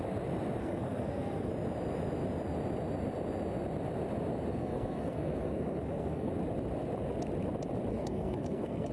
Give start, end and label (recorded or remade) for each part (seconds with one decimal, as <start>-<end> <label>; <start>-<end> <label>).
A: 0.0-0.6 recorded; 0.6-1.5 remade; 1.5-4.5 recorded; 4.5-6.3 remade; 6.3-7.9 recorded; 7.9-8.9 remade